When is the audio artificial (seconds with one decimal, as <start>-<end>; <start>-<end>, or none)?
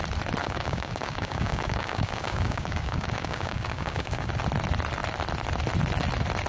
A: 0.4-4.3